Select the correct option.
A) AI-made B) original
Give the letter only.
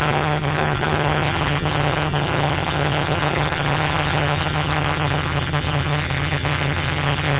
A